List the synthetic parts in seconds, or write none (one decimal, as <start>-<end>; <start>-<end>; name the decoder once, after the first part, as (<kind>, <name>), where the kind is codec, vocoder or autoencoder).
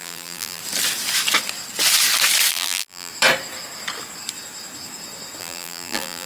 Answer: 0.0-0.6 (vocoder, BigVGAN v2); 2.5-3.1; 5.4-6.3